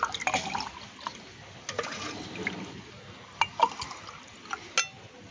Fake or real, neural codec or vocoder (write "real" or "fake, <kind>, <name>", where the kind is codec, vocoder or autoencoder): real